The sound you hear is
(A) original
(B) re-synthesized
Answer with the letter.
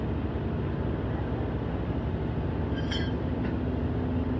A